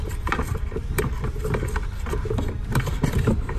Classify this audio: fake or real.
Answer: fake